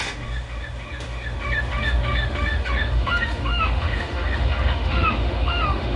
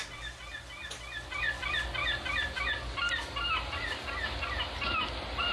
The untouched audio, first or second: second